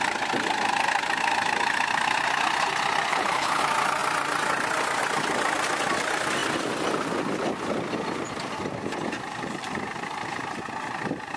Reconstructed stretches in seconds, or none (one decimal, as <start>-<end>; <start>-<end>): 3.1-3.6